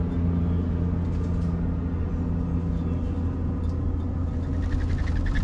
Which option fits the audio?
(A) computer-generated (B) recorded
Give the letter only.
B